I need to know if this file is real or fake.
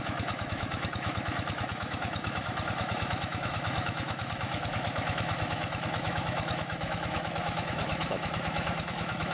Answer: fake